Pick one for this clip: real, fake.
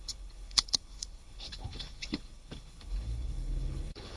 fake